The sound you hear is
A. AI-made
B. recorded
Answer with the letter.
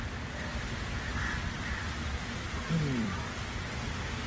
A